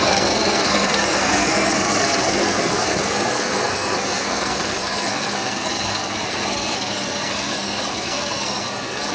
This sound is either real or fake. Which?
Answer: fake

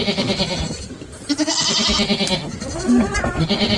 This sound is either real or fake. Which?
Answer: real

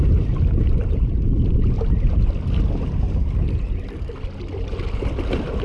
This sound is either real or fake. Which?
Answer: real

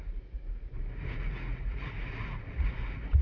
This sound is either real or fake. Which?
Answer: fake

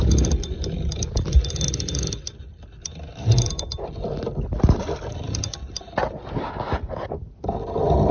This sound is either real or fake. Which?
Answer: real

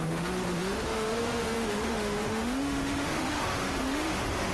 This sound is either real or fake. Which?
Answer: fake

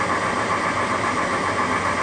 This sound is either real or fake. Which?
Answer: real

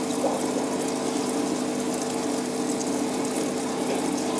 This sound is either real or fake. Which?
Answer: real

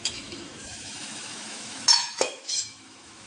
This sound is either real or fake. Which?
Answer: fake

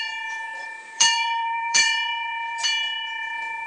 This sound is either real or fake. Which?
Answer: fake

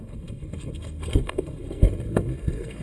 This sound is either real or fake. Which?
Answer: fake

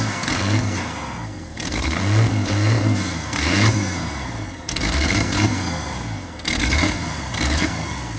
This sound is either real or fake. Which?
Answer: fake